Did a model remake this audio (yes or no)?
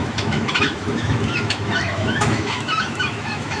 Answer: yes